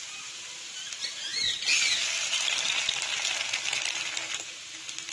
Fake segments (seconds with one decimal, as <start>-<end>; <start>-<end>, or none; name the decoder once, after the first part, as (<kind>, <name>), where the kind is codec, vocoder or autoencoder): none